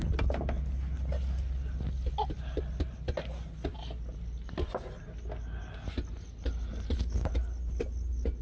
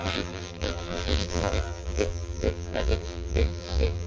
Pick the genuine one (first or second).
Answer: first